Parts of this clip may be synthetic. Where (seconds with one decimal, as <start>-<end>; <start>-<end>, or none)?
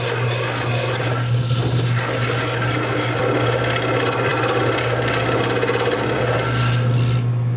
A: none